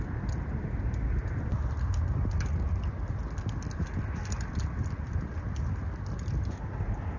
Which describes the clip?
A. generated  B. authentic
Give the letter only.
B